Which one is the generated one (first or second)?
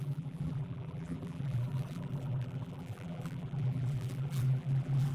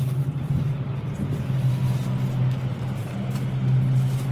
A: first